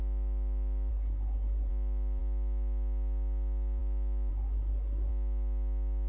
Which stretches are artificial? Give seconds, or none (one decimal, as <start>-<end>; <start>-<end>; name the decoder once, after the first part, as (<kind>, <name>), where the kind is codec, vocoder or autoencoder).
0.9-1.7 (codec, SNAC); 4.3-5.1